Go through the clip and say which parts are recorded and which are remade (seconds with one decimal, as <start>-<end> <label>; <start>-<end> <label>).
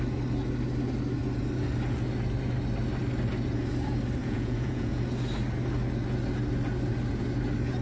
0.0-4.2 recorded; 4.2-5.0 remade; 5.0-7.8 recorded